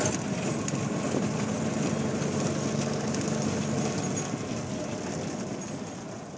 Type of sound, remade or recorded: recorded